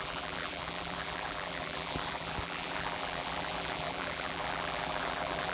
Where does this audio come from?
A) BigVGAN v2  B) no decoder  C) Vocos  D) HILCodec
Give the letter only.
A